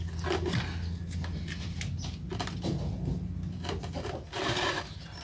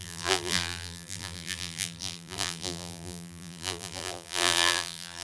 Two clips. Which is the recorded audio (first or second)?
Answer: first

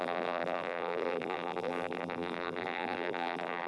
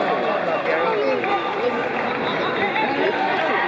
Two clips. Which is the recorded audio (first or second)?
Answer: second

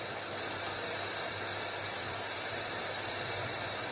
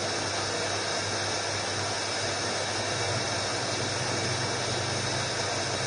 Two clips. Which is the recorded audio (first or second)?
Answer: second